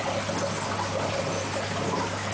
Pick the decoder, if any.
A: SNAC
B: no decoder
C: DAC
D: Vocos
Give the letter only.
B